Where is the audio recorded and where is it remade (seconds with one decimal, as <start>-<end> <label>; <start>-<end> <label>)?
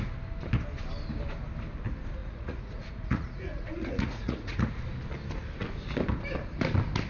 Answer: 0.0-2.2 recorded; 2.2-4.8 remade; 4.8-7.1 recorded